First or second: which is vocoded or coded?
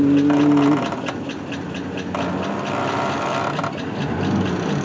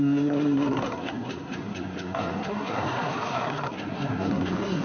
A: second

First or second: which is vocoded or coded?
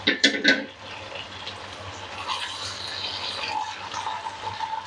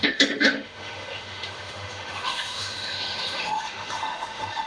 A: second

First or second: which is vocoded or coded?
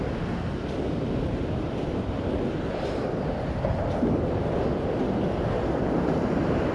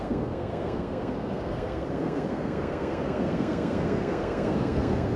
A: second